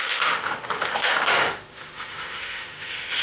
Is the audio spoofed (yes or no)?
yes